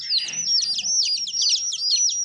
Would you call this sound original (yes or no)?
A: yes